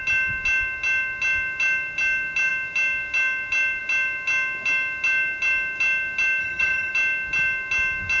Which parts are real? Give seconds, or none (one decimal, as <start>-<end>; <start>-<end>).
0.0-6.4; 6.9-8.2